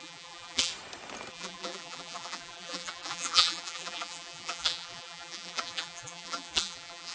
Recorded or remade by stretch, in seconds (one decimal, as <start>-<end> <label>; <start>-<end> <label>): 0.0-0.7 remade; 0.7-1.3 recorded; 1.3-7.1 remade